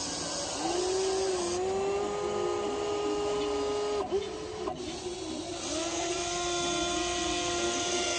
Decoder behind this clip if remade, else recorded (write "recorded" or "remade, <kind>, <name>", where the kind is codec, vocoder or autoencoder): recorded